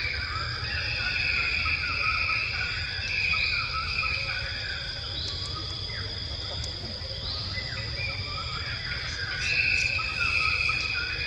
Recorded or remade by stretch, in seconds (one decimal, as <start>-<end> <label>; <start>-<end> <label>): 0.0-2.4 recorded; 2.4-2.9 remade; 2.9-4.7 recorded; 4.7-9.3 remade; 9.3-11.3 recorded